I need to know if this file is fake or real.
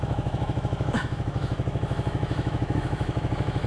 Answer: fake